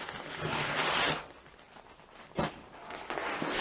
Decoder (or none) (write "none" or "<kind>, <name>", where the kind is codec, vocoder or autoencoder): none